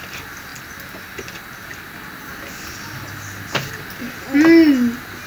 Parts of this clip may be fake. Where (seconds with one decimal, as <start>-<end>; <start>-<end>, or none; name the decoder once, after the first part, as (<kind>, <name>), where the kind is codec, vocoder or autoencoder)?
none